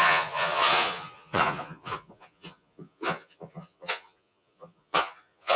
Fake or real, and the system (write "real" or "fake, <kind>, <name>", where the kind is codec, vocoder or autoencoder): fake, vocoder, Vocos